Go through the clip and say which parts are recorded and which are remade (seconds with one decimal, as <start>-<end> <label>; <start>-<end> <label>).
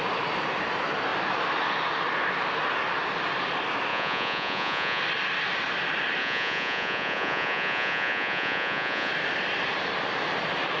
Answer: 0.0-3.9 recorded; 3.9-5.0 remade; 5.0-6.2 recorded; 6.2-9.1 remade; 9.1-10.8 recorded